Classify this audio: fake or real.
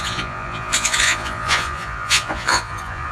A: fake